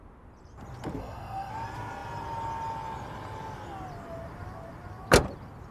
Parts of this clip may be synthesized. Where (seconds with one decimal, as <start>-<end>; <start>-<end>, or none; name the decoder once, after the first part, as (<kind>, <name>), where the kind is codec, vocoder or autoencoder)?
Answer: 1.0-1.5 (codec, SNAC)